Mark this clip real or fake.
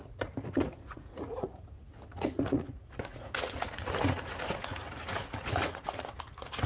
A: fake